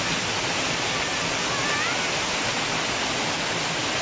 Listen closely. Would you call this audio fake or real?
real